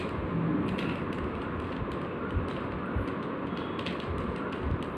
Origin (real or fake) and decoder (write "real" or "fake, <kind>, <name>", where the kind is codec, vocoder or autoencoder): real